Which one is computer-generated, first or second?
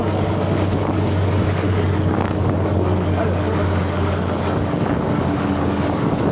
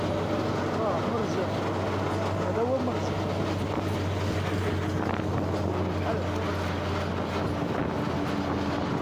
first